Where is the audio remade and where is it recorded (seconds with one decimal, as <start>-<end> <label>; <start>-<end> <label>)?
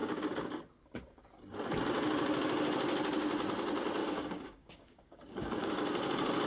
0.0-0.6 remade; 0.6-4.0 recorded; 4.0-5.7 remade; 5.7-6.5 recorded